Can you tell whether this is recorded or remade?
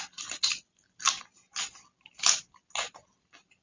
recorded